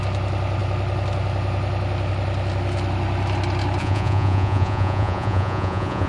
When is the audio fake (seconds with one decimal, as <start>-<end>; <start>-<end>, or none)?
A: 3.8-6.1

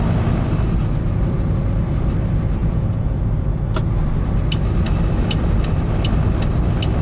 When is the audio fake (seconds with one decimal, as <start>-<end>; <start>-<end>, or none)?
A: 2.6-3.2

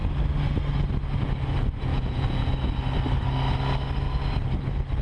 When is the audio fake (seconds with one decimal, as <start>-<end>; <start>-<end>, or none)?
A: 1.9-2.5

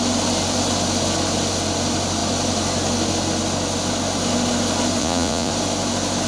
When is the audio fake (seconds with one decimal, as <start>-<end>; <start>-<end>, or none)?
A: 5.0-5.5

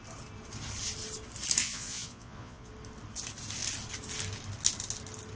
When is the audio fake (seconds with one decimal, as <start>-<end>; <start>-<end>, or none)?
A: 1.6-2.7

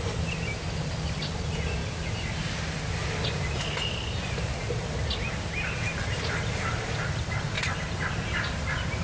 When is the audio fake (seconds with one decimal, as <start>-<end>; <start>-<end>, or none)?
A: none

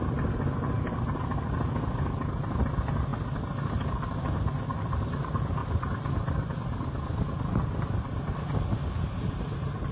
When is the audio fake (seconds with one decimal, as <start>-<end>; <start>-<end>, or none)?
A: none